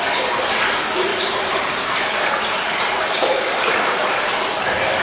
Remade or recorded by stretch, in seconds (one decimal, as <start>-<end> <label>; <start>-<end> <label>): 0.0-1.1 recorded; 1.1-4.1 remade; 4.1-5.0 recorded